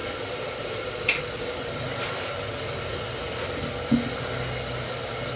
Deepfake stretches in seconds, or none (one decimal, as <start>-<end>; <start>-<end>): none